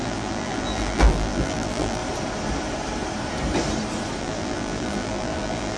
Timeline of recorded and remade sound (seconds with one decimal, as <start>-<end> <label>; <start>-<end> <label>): 0.0-2.0 remade; 2.0-4.2 recorded; 4.2-5.8 remade